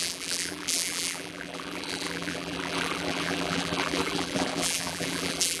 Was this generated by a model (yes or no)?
yes